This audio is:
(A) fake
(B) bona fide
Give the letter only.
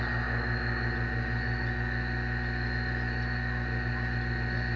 B